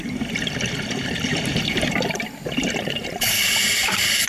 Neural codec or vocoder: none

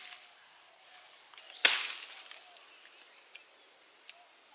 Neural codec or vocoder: none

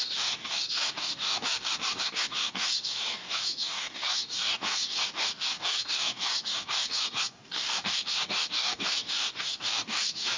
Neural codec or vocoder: codec, DAC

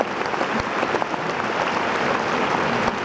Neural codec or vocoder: none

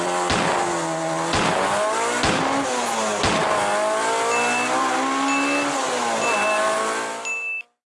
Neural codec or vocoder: none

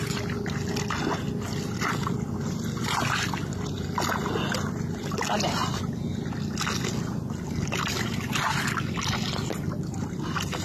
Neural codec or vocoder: none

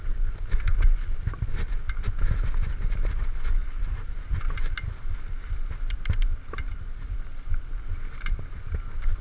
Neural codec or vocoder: none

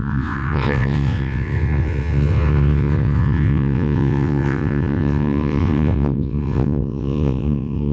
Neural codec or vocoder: vocoder, WaveNeXt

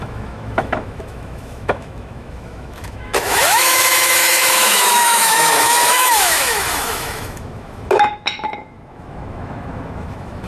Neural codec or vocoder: autoencoder, DAC-VAE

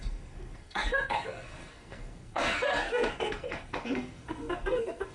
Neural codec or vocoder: codec, SNAC